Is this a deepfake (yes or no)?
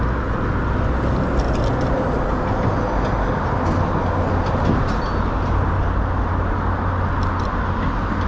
no